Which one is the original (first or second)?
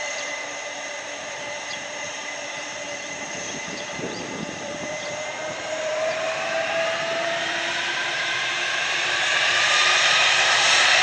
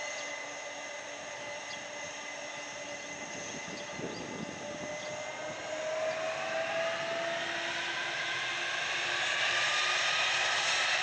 second